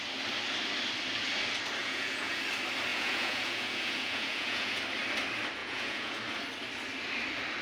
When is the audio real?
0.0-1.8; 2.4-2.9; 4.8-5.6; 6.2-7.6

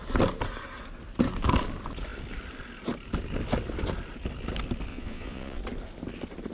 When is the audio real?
0.0-4.9; 5.6-6.5

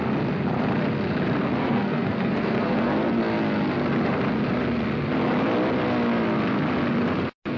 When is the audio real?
0.0-1.6; 3.2-7.6

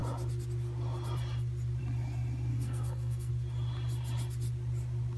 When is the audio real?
0.0-2.5; 3.3-5.2

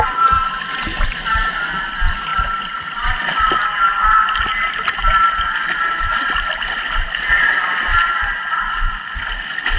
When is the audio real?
0.0-9.8

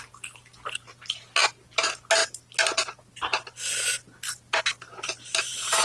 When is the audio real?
0.0-5.8

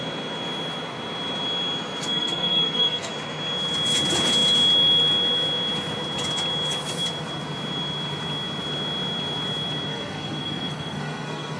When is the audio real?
0.0-2.0; 3.1-9.9